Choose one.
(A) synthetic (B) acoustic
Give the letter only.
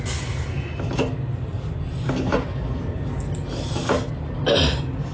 B